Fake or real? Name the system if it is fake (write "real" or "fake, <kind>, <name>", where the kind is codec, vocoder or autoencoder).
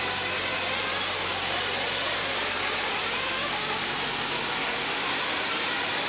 real